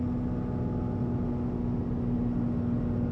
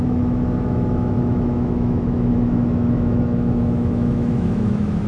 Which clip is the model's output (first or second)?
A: second